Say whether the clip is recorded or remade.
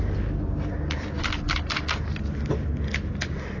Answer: recorded